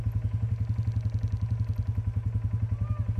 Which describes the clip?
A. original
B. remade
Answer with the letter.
A